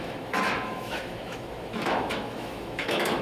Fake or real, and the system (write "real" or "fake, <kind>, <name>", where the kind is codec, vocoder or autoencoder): fake, autoencoder, DAC-VAE